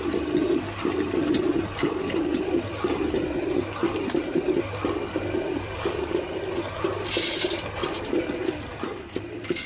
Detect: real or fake real